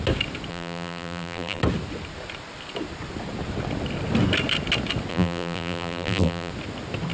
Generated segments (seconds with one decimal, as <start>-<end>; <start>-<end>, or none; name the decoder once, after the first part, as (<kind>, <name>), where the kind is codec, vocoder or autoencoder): 0.5-1.6 (vocoder, BigVGAN v2); 5.1-6.5